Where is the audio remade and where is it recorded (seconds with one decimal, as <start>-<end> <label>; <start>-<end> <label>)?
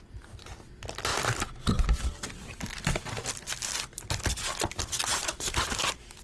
0.0-6.2 recorded